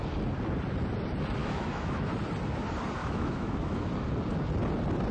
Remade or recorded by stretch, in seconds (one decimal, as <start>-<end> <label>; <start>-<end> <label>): 0.0-1.4 recorded; 1.4-2.1 remade; 2.1-3.0 recorded; 3.0-3.8 remade; 3.8-5.1 recorded